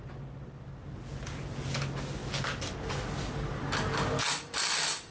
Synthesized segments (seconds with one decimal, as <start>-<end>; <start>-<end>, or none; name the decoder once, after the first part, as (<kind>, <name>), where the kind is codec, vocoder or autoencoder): none